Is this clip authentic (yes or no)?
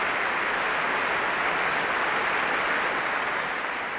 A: yes